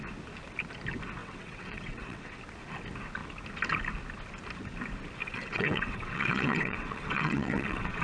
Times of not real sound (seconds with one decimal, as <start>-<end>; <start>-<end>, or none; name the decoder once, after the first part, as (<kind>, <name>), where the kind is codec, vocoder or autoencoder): 1.2-2.4 (vocoder, WaveNeXt); 5.2-8.0

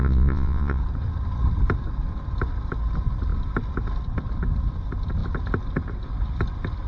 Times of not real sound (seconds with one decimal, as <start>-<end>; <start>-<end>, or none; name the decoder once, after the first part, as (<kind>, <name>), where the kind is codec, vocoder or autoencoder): 0.0-0.8 (vocoder, Vocos)

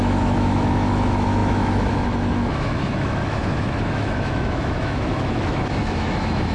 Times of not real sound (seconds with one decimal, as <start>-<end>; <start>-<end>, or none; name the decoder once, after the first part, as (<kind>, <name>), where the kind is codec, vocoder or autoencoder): 0.0-6.5 (autoencoder, DAC-VAE)

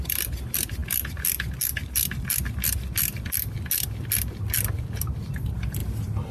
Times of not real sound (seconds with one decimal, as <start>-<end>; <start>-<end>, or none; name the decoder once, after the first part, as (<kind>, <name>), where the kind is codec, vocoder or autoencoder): none